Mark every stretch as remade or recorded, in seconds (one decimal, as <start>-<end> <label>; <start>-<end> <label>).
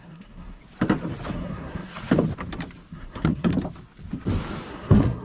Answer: 0.0-0.6 remade; 0.6-1.3 recorded; 1.3-1.9 remade; 1.9-2.9 recorded; 2.9-3.5 remade; 3.5-4.7 recorded; 4.7-5.2 remade